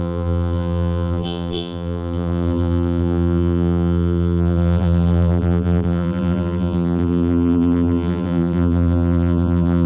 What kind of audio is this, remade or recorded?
remade